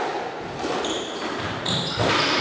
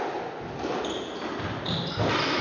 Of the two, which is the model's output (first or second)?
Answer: first